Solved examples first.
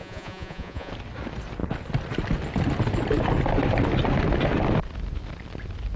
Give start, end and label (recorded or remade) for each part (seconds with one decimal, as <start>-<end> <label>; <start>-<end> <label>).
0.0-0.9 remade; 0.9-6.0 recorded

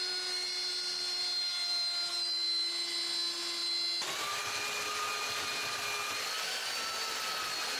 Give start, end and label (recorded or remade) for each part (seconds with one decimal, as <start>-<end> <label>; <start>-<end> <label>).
0.0-7.8 recorded

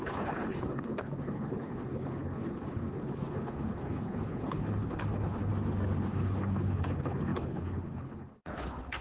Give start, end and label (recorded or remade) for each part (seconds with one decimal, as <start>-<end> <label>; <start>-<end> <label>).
0.0-5.5 remade; 5.5-6.0 recorded; 6.0-9.0 remade

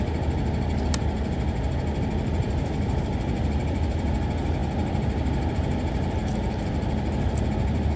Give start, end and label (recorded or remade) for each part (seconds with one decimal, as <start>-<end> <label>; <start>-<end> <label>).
0.0-2.4 recorded; 2.4-3.1 remade; 3.1-8.0 recorded